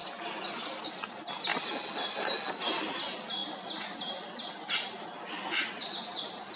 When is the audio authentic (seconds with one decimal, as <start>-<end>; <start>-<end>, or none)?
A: 0.0-6.6